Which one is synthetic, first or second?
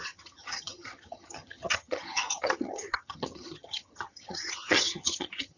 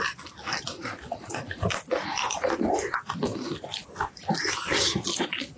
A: first